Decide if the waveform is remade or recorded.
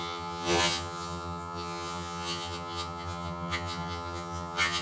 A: remade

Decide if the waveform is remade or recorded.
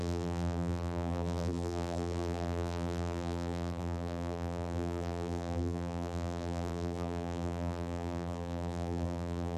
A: remade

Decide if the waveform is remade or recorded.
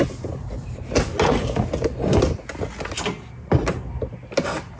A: recorded